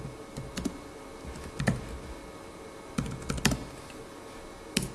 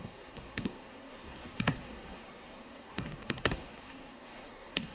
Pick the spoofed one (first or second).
second